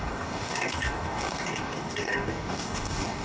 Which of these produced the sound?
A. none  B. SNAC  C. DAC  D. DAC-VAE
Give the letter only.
C